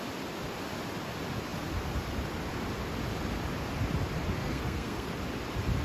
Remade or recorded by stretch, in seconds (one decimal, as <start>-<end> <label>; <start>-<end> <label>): 0.0-4.4 recorded; 4.4-5.1 remade; 5.1-5.8 recorded